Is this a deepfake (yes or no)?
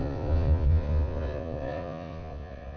yes